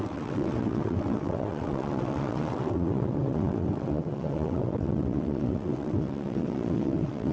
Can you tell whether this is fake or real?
fake